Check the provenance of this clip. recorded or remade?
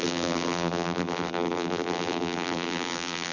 remade